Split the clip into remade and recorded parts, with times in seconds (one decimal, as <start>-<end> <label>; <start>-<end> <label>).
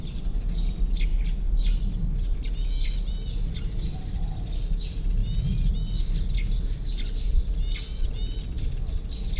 0.0-9.4 recorded